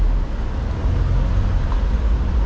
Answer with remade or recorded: recorded